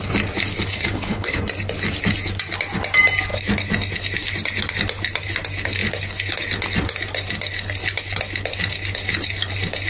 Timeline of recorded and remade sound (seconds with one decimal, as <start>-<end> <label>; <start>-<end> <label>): 0.0-0.7 recorded; 0.7-1.4 remade; 1.4-9.9 recorded